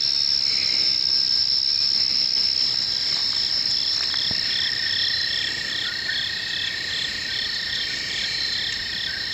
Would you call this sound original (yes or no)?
yes